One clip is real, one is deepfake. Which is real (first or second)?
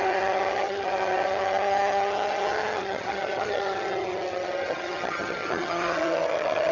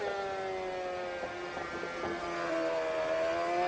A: second